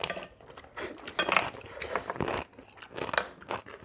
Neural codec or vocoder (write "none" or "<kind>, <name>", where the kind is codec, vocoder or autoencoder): none